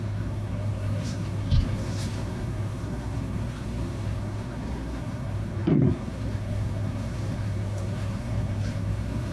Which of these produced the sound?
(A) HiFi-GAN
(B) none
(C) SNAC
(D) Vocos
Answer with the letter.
C